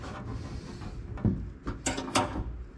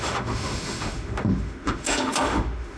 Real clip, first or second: first